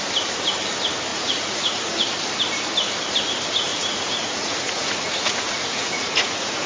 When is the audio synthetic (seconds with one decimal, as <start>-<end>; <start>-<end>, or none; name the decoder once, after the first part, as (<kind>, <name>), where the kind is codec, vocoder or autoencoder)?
1.1-1.8 (vocoder, Vocos); 3.7-6.7

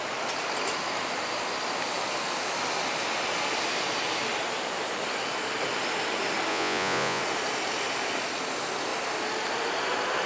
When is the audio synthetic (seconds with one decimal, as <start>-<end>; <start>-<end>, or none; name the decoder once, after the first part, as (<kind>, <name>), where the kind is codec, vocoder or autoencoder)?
6.5-7.2 (vocoder, Vocos)

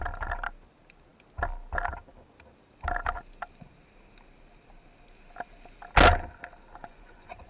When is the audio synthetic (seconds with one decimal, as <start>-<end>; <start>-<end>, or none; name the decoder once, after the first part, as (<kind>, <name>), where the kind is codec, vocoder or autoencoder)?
6.8-7.5 (vocoder, Vocos)

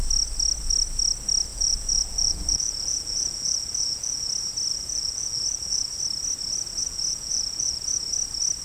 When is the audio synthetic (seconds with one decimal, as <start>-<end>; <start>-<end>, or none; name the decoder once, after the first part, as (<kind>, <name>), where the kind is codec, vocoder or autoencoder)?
1.5-4.3 (vocoder, Vocos); 4.7-6.0; 6.8-8.0

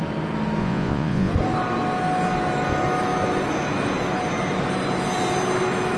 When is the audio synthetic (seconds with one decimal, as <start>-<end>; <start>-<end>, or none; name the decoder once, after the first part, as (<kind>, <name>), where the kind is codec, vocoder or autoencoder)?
0.6-1.3 (vocoder, Vocos)